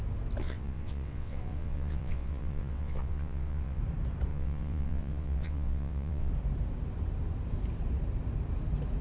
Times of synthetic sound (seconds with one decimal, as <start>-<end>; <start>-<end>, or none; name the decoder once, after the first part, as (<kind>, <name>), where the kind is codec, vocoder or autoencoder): 0.4-3.8 (vocoder, WaveNeXt); 4.3-6.3